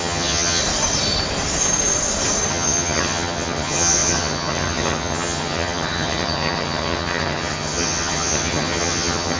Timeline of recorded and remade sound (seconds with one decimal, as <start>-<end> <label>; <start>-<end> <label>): 0.0-0.6 remade; 0.6-2.5 recorded; 2.5-9.4 remade